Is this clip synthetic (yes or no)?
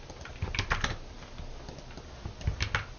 no